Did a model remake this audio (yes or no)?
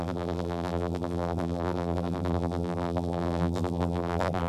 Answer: yes